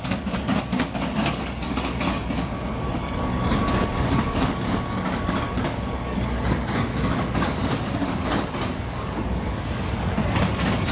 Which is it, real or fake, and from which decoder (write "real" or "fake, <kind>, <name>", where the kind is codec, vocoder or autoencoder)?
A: fake, codec, DAC